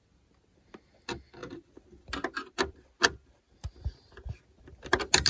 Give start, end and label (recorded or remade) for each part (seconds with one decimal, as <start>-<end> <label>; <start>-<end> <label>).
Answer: 0.0-5.3 recorded